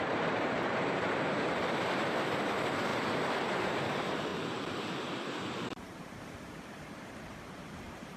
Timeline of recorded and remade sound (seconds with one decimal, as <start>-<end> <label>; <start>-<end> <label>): 0.0-8.2 remade